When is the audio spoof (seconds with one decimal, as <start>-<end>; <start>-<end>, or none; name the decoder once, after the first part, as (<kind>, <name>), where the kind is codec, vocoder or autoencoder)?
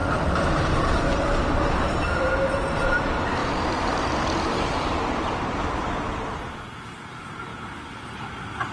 none